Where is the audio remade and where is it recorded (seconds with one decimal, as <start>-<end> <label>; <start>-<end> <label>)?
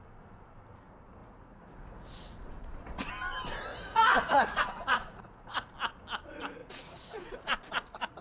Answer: 0.0-1.2 recorded; 1.2-3.1 remade; 3.1-3.7 recorded; 3.7-5.7 remade; 5.7-6.6 recorded; 6.6-8.2 remade